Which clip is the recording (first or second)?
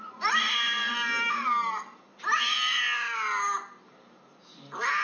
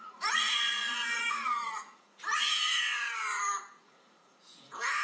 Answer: first